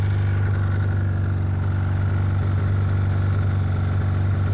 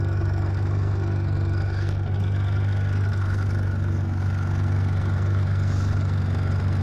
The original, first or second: first